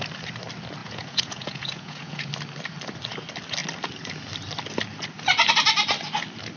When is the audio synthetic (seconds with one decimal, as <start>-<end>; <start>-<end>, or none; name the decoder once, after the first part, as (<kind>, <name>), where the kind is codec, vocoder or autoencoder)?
0.8-2.3 (vocoder, Vocos)

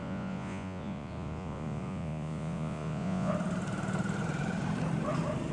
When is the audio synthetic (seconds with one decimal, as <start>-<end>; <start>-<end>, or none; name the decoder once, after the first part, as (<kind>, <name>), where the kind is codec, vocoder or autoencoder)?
0.0-3.3 (vocoder, Vocos)

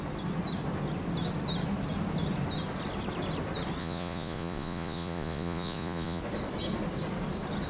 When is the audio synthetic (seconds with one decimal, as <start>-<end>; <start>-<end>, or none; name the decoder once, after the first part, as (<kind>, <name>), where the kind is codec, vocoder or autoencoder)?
3.8-6.2 (vocoder, Vocos)